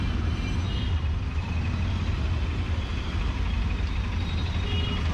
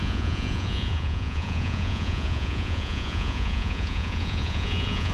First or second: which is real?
first